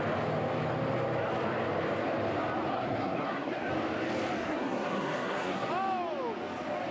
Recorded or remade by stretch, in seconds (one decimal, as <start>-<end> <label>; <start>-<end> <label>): 0.0-2.7 recorded; 2.7-3.7 remade; 3.7-4.4 recorded; 4.4-5.7 remade; 5.7-6.9 recorded